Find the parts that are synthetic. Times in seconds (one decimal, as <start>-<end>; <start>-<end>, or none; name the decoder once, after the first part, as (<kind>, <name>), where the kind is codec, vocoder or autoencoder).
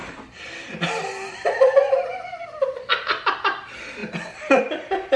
0.0-5.2 (vocoder, BigVGAN v2)